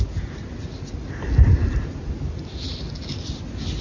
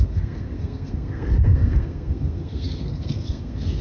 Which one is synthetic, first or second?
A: second